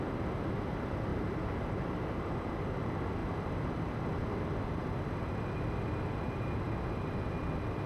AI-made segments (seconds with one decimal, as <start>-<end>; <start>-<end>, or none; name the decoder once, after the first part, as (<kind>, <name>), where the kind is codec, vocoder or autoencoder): 1.1-2.6 (vocoder, BigVGAN v2)

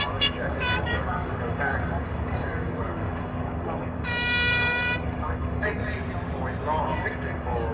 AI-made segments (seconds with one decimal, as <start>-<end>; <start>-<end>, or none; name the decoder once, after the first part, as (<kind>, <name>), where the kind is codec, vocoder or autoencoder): 0.0-5.8 (codec, DAC); 6.8-7.7

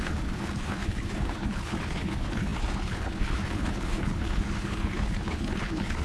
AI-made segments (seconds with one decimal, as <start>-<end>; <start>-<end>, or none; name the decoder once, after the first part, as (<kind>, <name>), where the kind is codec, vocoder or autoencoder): 0.0-6.0 (codec, HILCodec)

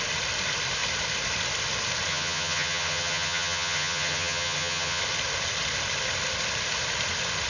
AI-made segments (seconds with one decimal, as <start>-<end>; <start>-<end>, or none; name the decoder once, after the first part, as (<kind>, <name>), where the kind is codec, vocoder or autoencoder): 2.1-5.0 (vocoder, HiFi-GAN)

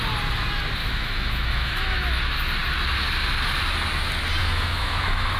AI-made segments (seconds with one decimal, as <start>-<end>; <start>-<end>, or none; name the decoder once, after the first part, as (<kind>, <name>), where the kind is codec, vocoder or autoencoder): 0.8-2.2 (autoencoder, DAC-VAE); 4.4-5.4